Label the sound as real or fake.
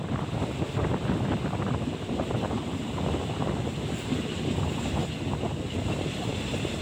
real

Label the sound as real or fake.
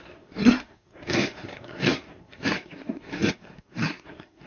fake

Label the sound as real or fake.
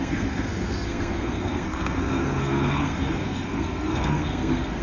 fake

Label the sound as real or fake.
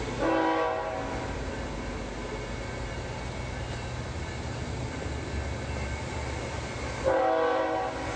real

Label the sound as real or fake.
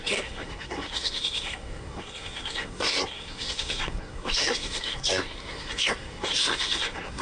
fake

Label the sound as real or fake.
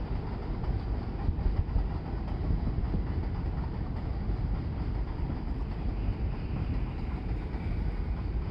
real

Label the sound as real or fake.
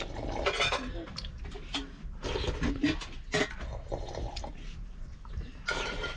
real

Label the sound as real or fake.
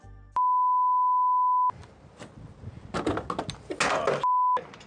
real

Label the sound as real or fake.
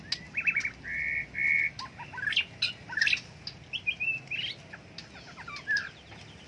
real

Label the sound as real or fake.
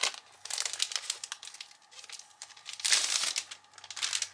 real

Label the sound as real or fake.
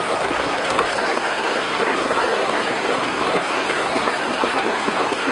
fake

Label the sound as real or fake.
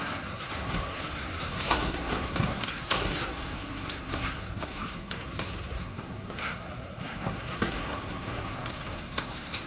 fake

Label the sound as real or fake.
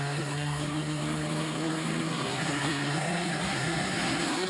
fake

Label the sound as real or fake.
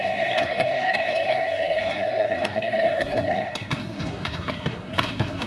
fake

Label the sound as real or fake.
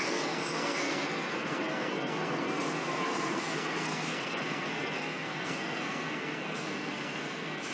fake